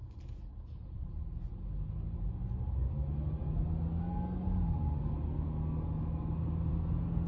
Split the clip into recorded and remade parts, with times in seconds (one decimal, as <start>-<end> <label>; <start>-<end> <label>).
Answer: 0.0-7.3 recorded